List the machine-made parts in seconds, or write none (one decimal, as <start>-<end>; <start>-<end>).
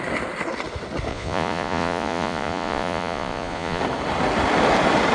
1.1-3.8